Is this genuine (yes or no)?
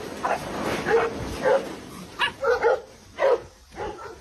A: yes